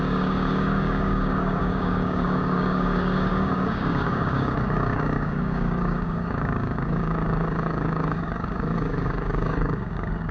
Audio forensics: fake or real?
fake